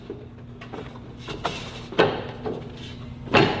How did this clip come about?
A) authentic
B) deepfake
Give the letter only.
A